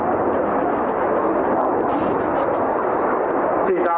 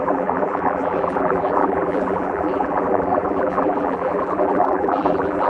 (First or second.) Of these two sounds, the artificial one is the second